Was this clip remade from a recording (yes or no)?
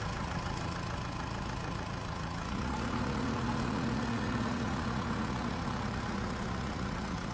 yes